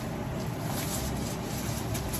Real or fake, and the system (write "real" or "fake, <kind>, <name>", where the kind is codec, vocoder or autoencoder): real